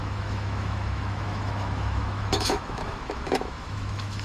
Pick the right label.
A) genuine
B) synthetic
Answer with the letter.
B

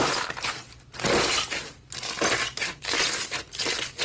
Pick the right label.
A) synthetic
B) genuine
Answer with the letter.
B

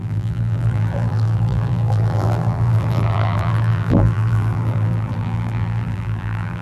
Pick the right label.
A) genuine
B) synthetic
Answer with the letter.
B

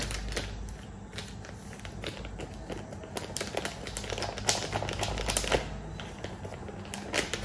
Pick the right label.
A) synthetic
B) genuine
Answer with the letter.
B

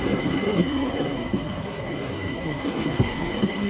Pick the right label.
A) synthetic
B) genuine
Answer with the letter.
A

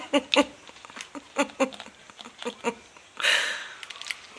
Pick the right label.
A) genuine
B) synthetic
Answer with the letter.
A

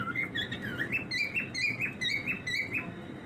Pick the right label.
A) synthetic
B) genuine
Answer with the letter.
B